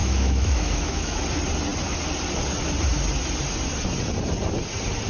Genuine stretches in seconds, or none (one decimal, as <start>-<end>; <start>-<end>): 1.2-5.1

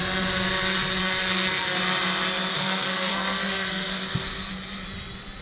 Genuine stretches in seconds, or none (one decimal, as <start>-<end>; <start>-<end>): 0.0-1.0; 1.8-2.5; 4.5-5.4

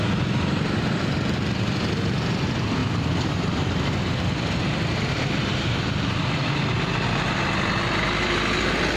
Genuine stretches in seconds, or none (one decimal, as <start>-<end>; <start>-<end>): 0.0-9.0

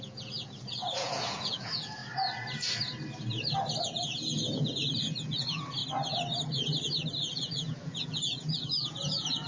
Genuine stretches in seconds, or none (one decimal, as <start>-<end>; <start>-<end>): 2.0-3.8; 5.8-7.3

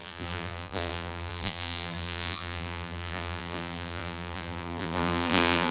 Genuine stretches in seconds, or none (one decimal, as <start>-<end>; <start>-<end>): none

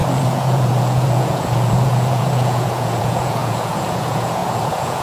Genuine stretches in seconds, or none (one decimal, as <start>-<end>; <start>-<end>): none

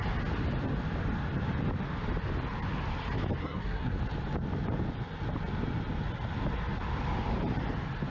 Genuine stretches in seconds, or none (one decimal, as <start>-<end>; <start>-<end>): 0.0-3.4; 4.0-8.1

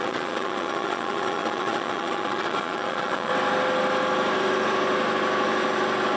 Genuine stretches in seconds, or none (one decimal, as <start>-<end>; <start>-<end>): 3.3-6.2